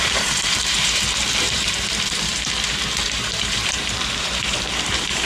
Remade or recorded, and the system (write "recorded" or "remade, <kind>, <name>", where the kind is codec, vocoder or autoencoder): remade, vocoder, BigVGAN v2